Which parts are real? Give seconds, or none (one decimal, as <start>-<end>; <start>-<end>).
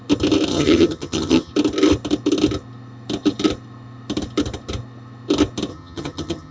0.0-0.5; 1.5-5.7